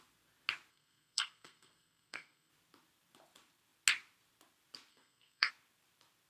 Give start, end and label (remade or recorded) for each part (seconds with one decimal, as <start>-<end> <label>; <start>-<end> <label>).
0.0-0.7 recorded; 0.7-2.5 remade; 2.5-4.9 recorded; 4.9-5.5 remade; 5.5-6.3 recorded